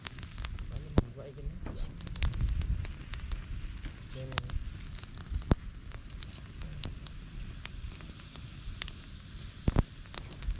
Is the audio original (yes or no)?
yes